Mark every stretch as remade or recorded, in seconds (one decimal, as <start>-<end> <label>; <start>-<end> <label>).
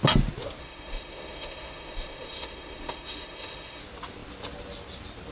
0.0-0.6 recorded; 0.6-3.8 remade; 3.8-5.3 recorded